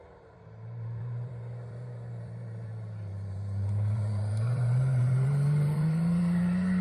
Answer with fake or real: fake